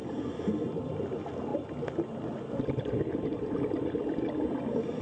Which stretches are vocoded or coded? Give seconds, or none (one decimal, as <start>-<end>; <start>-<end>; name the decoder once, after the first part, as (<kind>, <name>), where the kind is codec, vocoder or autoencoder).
none